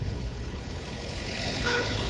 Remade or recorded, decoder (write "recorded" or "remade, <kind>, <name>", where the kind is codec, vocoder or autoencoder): remade, codec, HILCodec